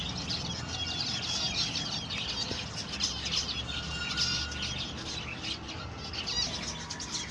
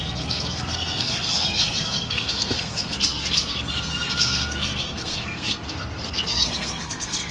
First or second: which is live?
first